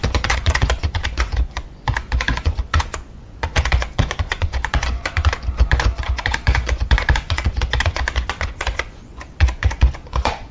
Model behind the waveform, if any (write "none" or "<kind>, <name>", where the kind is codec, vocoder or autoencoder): vocoder, Vocos